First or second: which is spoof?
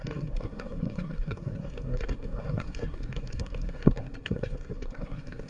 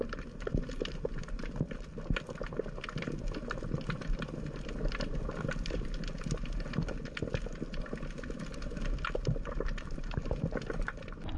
first